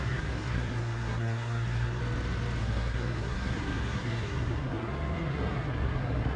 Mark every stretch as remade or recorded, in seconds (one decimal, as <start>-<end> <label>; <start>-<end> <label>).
0.0-2.0 remade; 2.0-2.6 recorded; 2.6-6.4 remade